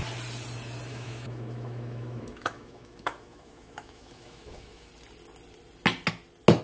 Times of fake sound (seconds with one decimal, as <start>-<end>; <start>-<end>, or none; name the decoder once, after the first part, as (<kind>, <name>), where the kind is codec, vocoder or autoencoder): 0.9-4.9 (autoencoder, DAC-VAE)